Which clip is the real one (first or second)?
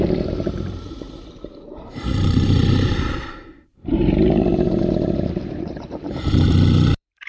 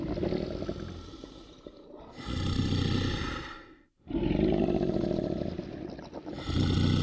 second